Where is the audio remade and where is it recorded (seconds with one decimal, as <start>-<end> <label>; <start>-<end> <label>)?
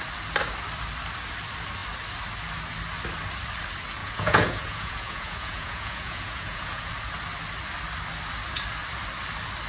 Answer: 0.0-4.0 recorded; 4.0-6.9 remade; 6.9-9.7 recorded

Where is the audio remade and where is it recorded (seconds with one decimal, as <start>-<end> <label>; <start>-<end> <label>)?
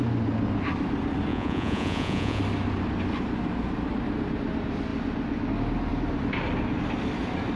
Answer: 0.0-1.3 recorded; 1.3-2.4 remade; 2.4-7.6 recorded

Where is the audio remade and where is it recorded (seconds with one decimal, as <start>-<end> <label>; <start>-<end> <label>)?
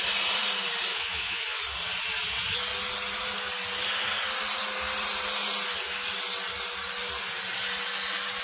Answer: 0.0-0.9 recorded; 0.9-1.6 remade; 1.6-8.4 recorded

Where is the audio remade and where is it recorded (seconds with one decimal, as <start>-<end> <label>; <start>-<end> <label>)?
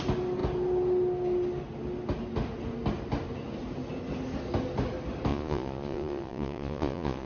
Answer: 0.0-5.3 recorded; 5.3-7.3 remade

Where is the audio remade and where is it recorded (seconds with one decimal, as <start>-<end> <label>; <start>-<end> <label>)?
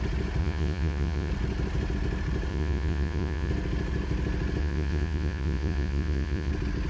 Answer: 0.0-0.4 recorded; 0.4-1.3 remade; 1.3-2.5 recorded; 2.5-3.5 remade; 3.5-4.6 recorded; 4.6-6.5 remade; 6.5-6.9 recorded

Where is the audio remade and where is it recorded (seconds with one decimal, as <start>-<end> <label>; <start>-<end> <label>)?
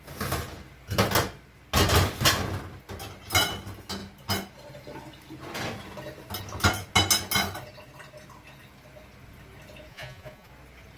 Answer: 0.0-9.9 recorded; 9.9-10.5 remade; 10.5-11.0 recorded